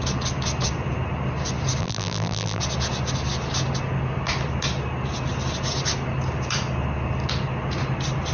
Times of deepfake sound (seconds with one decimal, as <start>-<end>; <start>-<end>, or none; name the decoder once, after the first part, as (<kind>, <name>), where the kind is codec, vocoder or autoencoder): 1.8-2.6 (vocoder, BigVGAN v2)